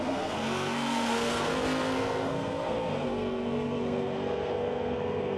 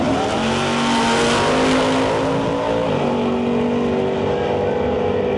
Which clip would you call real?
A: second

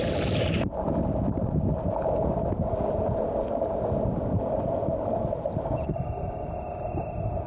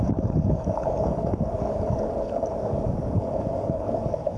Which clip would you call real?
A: first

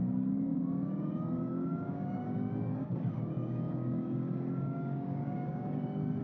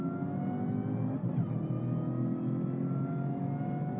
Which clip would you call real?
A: second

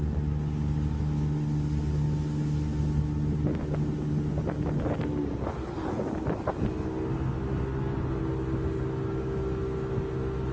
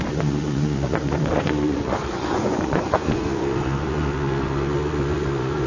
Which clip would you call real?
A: first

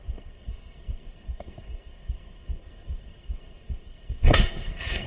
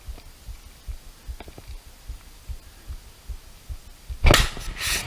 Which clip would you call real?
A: second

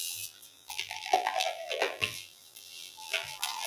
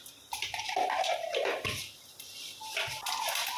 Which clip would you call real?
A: second